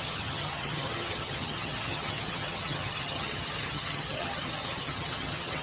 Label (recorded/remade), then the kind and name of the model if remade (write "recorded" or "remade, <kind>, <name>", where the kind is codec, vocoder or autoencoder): remade, vocoder, HiFi-GAN